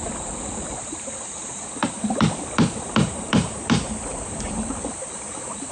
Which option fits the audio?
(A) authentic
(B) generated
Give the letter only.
B